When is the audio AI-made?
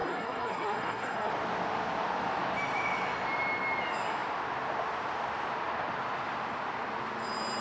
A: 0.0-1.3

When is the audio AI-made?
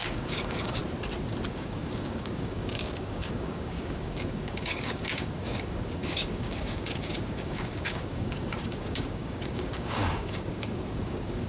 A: 0.0-0.8; 1.5-11.5